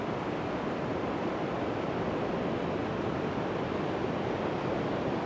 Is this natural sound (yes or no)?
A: yes